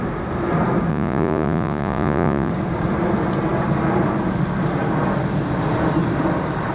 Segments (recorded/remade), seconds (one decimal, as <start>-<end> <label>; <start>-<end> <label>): 0.0-0.9 recorded; 0.9-2.5 remade; 2.5-6.7 recorded